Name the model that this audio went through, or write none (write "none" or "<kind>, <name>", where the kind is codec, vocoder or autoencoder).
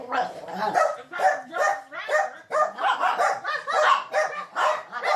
vocoder, BigVGAN v2